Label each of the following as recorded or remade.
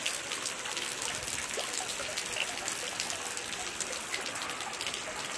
recorded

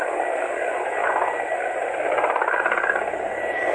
recorded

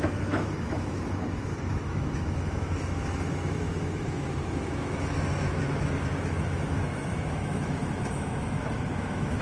remade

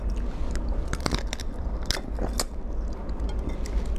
recorded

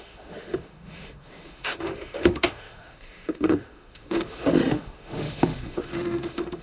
remade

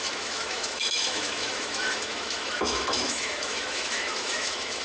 remade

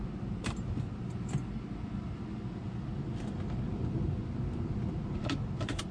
recorded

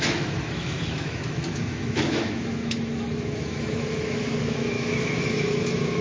remade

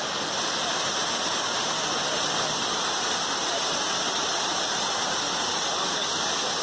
recorded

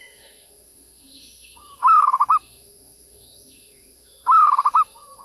remade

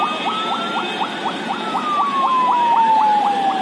recorded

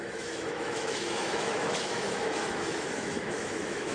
remade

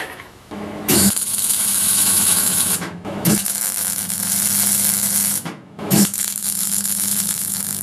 remade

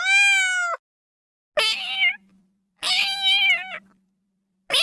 recorded